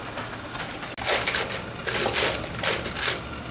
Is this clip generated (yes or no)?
no